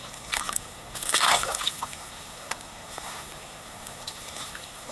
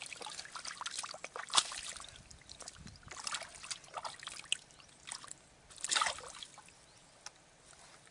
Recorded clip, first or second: second